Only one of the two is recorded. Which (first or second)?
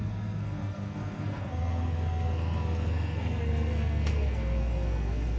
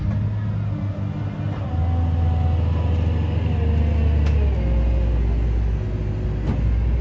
second